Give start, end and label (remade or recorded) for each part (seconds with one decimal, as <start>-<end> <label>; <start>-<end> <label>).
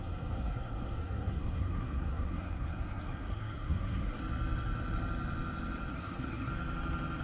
0.0-4.2 remade; 4.2-5.9 recorded; 5.9-6.5 remade; 6.5-7.2 recorded